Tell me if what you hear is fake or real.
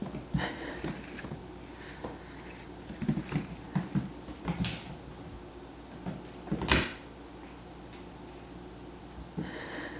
real